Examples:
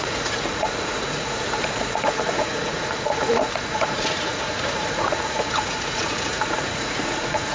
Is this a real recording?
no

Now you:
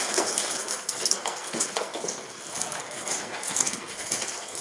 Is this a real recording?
no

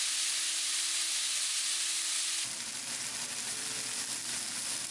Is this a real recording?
yes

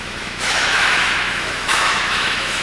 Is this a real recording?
no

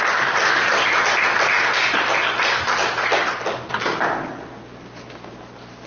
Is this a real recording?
yes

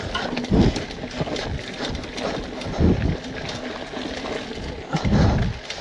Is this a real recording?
yes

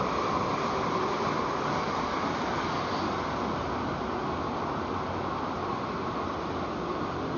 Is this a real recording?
yes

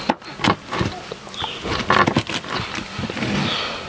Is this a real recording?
yes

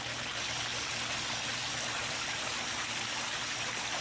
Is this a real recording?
yes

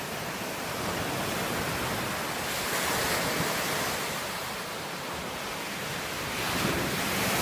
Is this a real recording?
yes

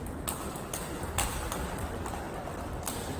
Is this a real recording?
yes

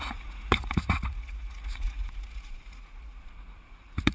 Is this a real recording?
no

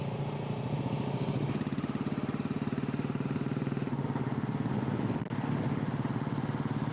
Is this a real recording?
yes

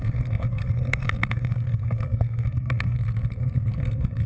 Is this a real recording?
no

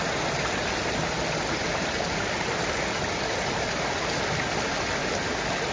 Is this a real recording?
yes